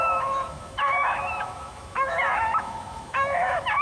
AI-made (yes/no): yes